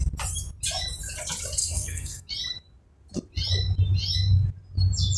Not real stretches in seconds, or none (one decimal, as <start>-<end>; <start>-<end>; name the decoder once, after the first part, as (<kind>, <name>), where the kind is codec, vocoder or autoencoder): 1.6-2.3 (codec, SNAC)